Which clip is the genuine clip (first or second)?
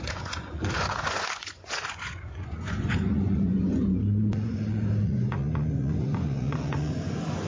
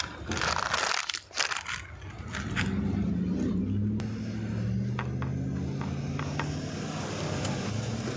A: second